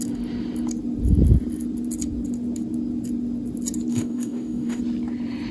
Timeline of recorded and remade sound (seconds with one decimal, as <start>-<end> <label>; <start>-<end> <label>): 0.0-3.9 recorded; 3.9-4.8 remade; 4.8-5.5 recorded